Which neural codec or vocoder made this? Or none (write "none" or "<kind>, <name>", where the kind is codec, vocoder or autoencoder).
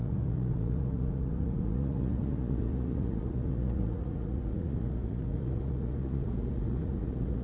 vocoder, Vocos